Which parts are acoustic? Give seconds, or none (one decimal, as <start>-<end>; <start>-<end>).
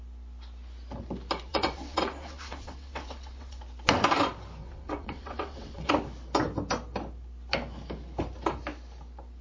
0.0-1.5; 3.6-4.6; 5.9-9.4